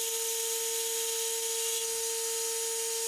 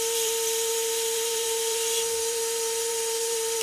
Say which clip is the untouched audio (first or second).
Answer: first